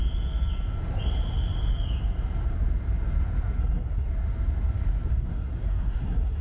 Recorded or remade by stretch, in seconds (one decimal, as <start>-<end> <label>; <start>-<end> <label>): 0.0-3.6 recorded; 3.6-4.1 remade; 4.1-5.1 recorded; 5.1-6.4 remade